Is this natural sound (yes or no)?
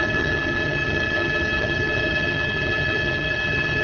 no